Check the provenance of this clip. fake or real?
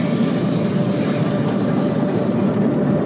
real